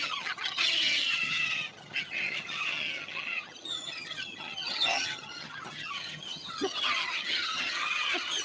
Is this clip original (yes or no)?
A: no